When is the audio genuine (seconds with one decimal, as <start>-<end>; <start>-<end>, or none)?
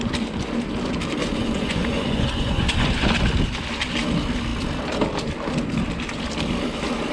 0.0-1.2; 3.1-7.1